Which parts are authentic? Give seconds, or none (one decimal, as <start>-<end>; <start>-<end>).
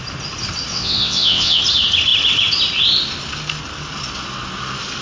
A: 0.0-0.7; 1.6-5.0